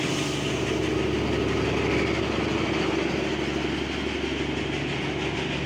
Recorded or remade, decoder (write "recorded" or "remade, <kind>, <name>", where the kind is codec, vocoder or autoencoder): recorded